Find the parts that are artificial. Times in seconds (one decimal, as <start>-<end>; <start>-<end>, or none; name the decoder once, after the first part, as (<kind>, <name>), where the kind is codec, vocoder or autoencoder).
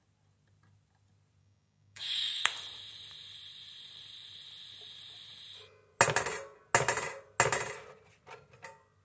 1.4-2.4 (codec, DAC)